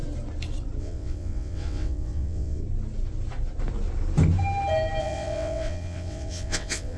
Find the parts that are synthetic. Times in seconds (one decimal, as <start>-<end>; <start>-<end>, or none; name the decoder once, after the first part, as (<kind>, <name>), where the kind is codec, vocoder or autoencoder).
0.8-2.6 (vocoder, WaveNeXt); 5.0-7.0